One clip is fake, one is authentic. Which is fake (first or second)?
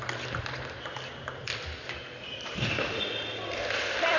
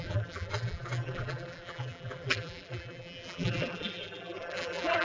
second